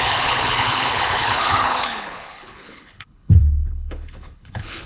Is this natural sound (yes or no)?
no